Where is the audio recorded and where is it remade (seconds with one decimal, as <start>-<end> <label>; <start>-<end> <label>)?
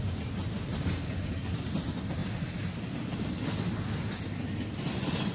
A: 0.0-5.3 recorded